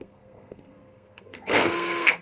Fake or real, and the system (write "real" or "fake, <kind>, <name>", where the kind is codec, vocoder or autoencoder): fake, codec, SNAC